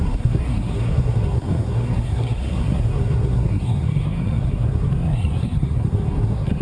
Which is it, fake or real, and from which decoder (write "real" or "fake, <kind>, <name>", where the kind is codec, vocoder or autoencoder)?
fake, codec, SNAC